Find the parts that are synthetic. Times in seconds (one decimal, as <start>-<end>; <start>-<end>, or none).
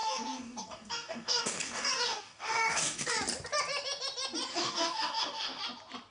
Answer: 0.0-3.1; 4.5-5.6